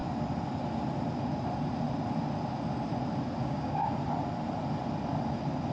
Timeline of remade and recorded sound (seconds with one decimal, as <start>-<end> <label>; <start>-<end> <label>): 0.0-3.4 recorded; 3.4-3.9 remade; 3.9-5.7 recorded